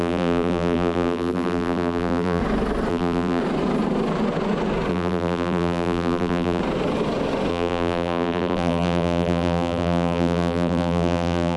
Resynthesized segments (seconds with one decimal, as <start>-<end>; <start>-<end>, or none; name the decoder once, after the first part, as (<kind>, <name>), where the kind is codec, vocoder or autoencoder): 0.0-2.4 (vocoder, BigVGAN v2); 2.9-3.4; 4.9-6.6; 7.5-11.6